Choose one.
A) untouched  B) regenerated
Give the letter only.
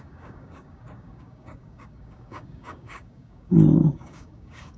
B